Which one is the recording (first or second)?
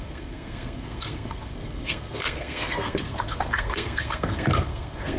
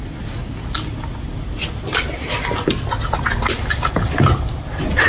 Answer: second